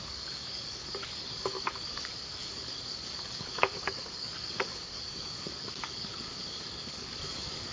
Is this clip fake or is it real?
fake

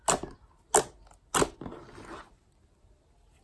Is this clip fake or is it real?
real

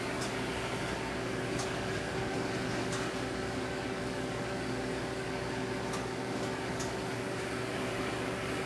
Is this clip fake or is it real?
fake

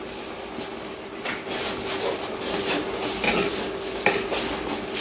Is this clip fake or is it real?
real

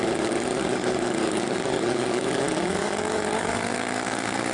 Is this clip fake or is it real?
fake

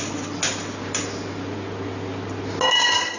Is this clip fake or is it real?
real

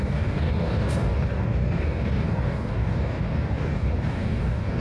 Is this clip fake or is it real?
fake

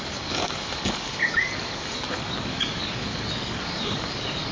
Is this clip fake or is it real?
fake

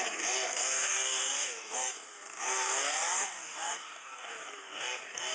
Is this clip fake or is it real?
fake